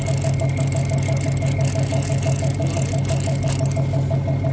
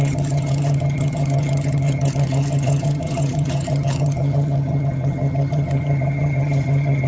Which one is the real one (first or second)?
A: first